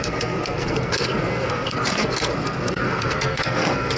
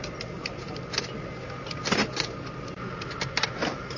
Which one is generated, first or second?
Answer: first